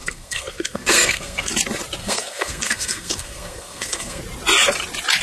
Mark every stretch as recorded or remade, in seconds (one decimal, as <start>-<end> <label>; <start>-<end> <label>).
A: 0.0-1.5 remade; 1.5-2.0 recorded; 2.0-4.2 remade; 4.2-5.2 recorded